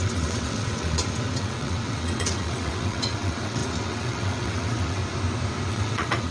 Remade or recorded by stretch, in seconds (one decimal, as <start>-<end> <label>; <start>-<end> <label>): 0.0-5.0 remade; 5.0-5.7 recorded; 5.7-6.3 remade